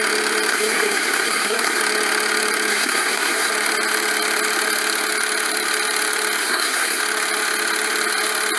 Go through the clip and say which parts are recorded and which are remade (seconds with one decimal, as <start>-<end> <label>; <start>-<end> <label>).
0.0-0.5 recorded; 0.5-1.8 remade; 1.8-2.7 recorded; 2.7-3.5 remade; 3.5-6.4 recorded; 6.4-7.0 remade; 7.0-8.6 recorded